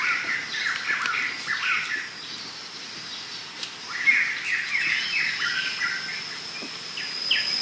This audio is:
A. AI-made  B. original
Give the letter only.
B